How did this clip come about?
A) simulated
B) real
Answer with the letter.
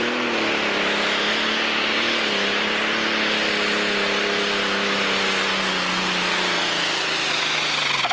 B